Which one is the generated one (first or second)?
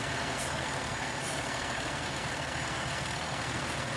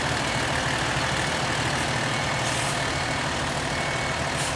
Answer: first